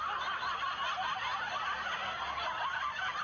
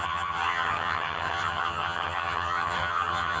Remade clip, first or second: second